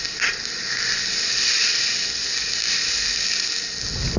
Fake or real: real